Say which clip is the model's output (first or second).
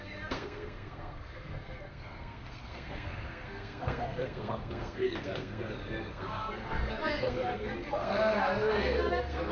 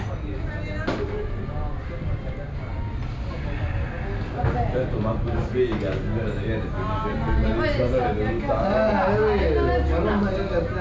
first